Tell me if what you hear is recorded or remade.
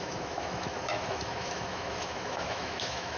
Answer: remade